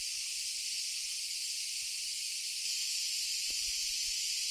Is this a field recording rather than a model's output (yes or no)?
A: yes